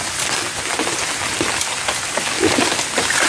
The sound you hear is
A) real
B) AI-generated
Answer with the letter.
A